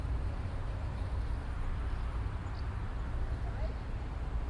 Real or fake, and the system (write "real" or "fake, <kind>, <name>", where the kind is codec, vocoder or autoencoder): real